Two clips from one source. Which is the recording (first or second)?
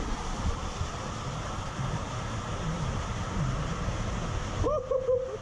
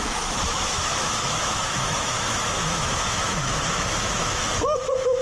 first